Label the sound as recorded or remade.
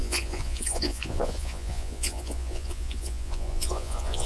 remade